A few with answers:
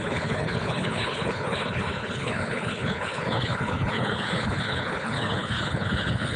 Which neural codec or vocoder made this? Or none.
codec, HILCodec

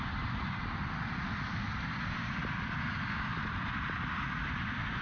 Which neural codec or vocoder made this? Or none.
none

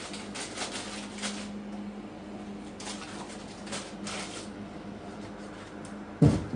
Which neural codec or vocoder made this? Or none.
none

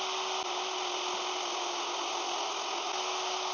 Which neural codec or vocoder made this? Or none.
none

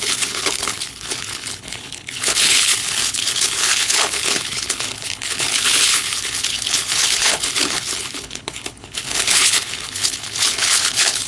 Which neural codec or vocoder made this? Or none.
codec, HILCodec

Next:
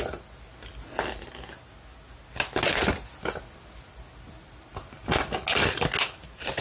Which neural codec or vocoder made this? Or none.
none